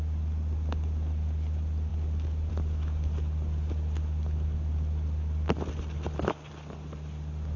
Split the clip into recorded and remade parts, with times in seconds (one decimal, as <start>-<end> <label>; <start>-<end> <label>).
0.0-7.6 recorded